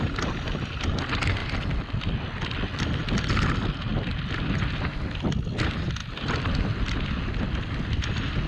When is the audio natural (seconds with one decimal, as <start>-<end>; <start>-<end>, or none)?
0.0-8.5